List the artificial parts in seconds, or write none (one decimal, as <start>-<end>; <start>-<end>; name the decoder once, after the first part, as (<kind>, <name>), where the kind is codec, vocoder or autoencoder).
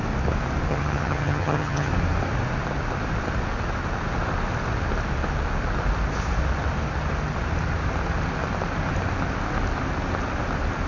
0.7-1.9 (vocoder, HiFi-GAN)